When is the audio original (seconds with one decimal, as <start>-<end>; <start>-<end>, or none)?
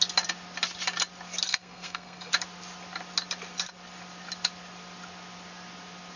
0.0-1.5; 2.3-6.2